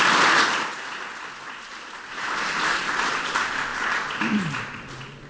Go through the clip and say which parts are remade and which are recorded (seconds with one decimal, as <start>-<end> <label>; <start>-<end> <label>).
0.0-5.3 recorded